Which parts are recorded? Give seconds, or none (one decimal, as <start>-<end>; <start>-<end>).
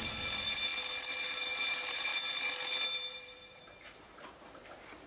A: 0.7-1.7; 2.1-3.1